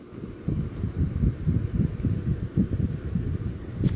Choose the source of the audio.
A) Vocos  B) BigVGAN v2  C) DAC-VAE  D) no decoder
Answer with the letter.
B